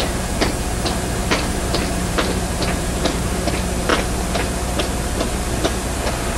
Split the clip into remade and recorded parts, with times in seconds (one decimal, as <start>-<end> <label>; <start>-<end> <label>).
0.0-1.2 recorded; 1.2-3.5 remade; 3.5-6.4 recorded